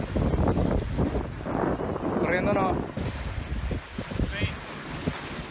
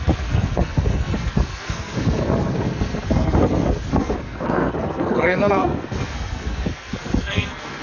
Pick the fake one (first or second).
second